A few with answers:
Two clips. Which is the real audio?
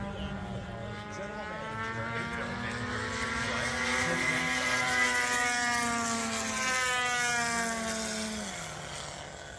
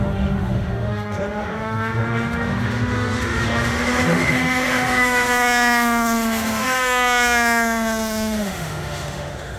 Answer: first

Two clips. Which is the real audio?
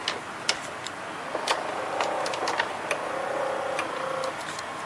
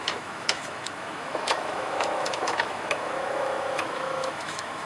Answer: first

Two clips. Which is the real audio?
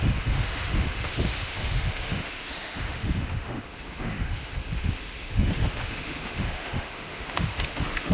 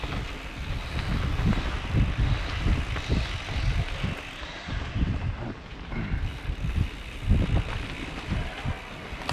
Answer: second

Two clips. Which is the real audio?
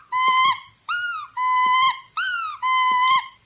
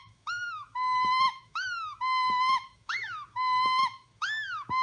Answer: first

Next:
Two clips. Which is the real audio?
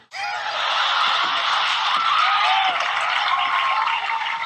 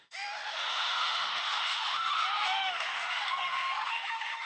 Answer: first